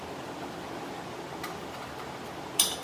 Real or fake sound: real